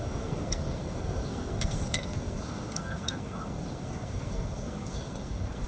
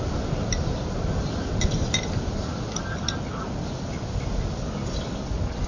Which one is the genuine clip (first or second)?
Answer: second